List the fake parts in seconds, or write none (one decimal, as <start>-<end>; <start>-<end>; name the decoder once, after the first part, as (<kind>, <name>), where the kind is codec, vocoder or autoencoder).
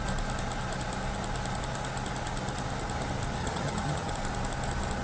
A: 3.4-4.1 (vocoder, HiFi-GAN)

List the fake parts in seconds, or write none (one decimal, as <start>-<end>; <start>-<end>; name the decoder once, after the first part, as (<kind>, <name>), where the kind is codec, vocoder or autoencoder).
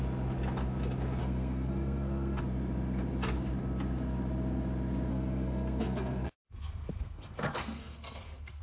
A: 1.2-2.4 (codec, SNAC); 5.1-8.6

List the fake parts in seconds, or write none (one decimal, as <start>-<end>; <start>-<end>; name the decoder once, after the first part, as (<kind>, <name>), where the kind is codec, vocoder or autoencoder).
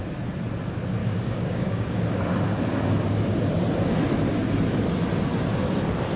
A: 1.0-2.0 (codec, DAC)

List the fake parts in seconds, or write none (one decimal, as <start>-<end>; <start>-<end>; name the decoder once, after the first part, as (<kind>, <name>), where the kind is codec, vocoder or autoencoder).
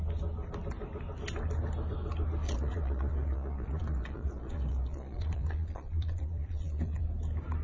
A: 2.4-7.0 (vocoder, Vocos)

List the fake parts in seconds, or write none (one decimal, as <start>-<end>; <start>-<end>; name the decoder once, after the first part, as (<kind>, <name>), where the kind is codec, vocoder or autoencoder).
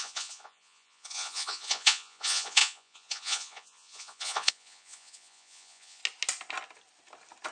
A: 0.0-6.0 (vocoder, Vocos)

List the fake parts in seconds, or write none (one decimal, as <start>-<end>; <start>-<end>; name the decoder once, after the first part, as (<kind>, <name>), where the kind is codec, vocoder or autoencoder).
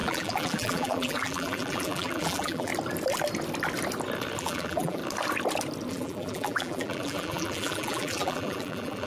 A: 0.0-2.7 (vocoder, BigVGAN v2); 4.4-5.0; 5.9-9.1